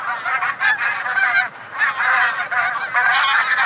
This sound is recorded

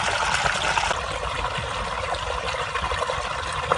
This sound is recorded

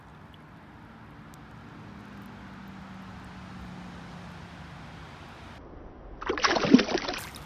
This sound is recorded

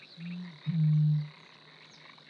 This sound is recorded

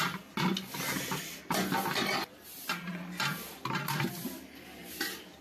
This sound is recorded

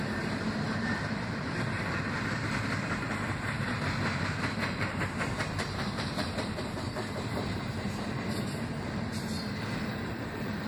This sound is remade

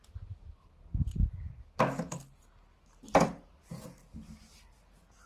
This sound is recorded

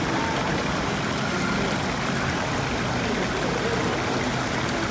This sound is recorded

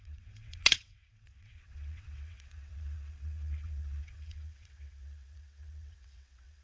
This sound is remade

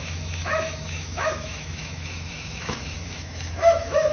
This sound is remade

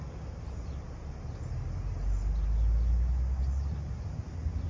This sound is recorded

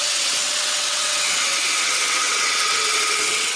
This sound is remade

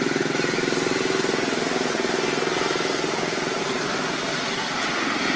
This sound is recorded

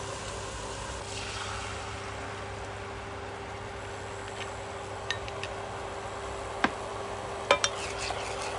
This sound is recorded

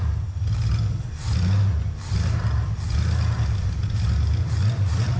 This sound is recorded